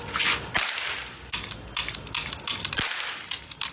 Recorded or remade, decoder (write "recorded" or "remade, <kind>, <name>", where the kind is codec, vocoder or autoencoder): recorded